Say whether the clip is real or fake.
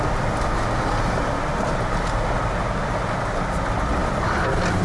real